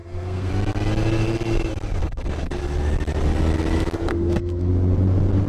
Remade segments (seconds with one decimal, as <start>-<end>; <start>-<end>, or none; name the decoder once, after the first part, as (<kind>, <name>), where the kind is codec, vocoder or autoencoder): 0.0-0.5 (codec, SNAC); 2.0-2.6; 4.1-4.7